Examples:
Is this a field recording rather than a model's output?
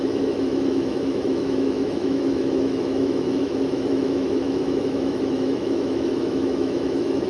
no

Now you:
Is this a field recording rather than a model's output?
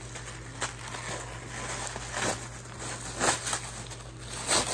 yes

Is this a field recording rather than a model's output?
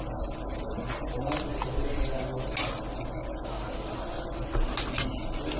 yes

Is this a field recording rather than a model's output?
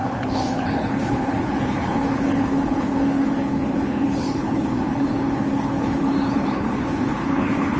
no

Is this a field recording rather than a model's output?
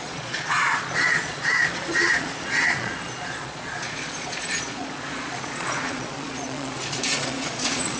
no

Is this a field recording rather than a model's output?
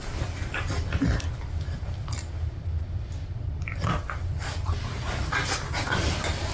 yes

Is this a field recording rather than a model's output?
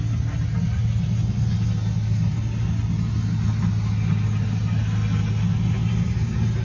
yes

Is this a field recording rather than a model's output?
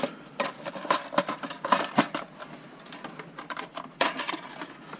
yes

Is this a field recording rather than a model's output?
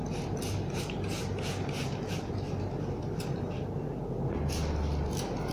yes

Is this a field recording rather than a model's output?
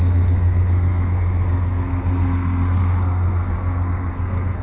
no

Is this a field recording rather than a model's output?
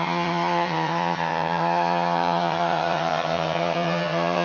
no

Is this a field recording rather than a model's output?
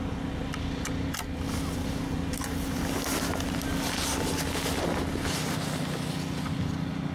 yes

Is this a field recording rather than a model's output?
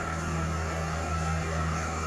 no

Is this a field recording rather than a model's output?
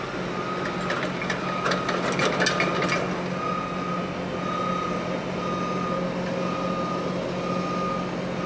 yes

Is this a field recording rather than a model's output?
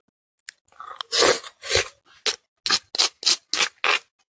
yes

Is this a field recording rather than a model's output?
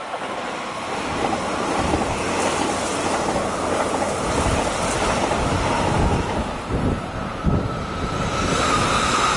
yes